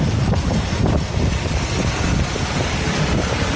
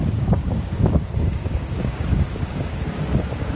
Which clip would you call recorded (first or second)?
first